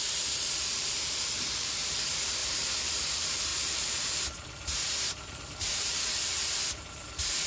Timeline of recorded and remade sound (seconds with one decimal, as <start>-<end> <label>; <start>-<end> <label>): 0.0-7.5 remade

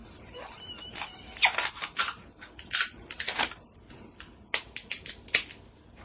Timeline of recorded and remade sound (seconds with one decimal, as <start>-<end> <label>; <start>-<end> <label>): 0.0-6.0 recorded

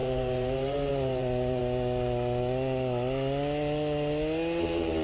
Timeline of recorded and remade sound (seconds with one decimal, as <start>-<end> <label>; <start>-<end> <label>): 0.0-1.6 remade; 1.6-4.6 recorded; 4.6-5.0 remade